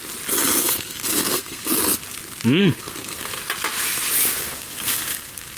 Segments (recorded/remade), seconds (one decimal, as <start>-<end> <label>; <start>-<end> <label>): 0.0-0.6 recorded; 0.6-1.8 remade; 1.8-2.6 recorded; 2.6-3.4 remade; 3.4-4.4 recorded; 4.4-5.6 remade